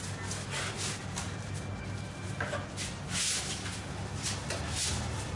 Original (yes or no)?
yes